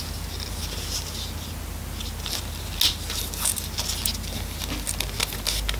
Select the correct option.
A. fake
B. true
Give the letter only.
B